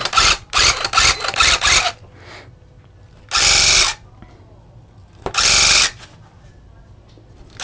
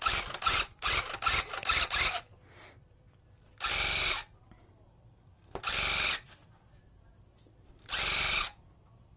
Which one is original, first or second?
first